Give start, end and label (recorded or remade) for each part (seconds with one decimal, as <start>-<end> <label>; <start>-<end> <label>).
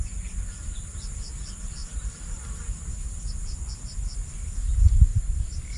0.0-5.1 recorded; 5.1-5.8 remade